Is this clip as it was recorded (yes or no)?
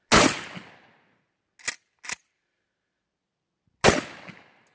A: yes